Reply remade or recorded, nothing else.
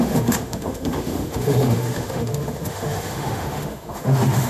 remade